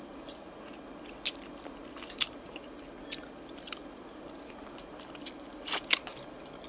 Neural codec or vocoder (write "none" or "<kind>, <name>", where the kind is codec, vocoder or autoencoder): none